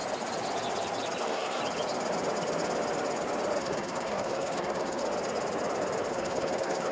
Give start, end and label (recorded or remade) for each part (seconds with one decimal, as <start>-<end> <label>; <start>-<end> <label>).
0.0-1.2 recorded; 1.2-1.6 remade; 1.6-3.6 recorded; 3.6-5.0 remade; 5.0-6.1 recorded; 6.1-6.9 remade